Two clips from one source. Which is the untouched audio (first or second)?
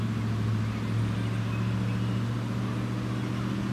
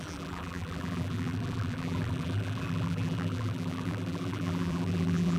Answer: first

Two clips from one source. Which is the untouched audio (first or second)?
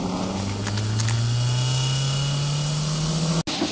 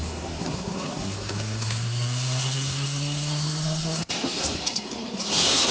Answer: first